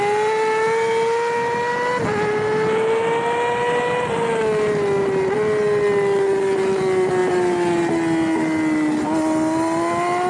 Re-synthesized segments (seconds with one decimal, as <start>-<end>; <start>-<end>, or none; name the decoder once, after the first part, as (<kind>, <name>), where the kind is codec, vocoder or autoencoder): none